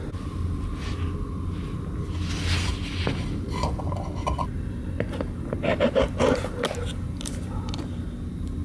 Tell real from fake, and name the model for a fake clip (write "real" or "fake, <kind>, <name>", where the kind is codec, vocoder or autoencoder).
real